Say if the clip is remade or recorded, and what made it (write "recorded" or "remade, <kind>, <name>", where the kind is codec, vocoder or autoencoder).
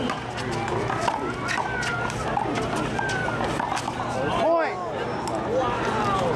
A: recorded